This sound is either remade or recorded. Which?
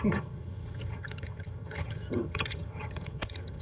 remade